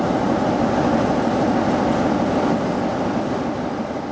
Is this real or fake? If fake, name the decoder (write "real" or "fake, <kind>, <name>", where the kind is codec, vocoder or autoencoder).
real